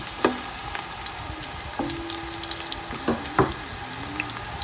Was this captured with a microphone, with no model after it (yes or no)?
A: yes